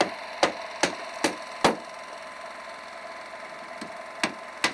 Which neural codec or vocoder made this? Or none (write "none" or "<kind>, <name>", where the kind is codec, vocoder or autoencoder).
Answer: none